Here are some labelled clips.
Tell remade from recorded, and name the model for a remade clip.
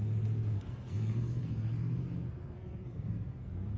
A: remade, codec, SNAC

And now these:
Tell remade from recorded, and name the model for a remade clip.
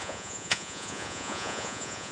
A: remade, vocoder, Vocos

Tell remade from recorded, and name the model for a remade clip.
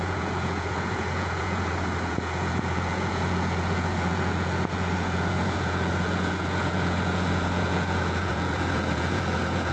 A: remade, vocoder, Vocos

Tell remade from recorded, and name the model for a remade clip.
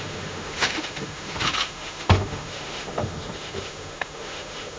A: remade, autoencoder, DAC-VAE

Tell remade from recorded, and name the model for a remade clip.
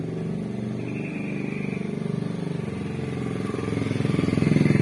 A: recorded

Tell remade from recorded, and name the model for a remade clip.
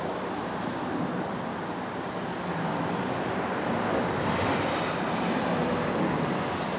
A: recorded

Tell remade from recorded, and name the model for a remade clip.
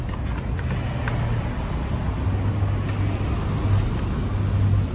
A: recorded